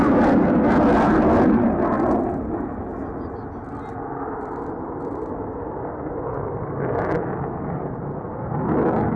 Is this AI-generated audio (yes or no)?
no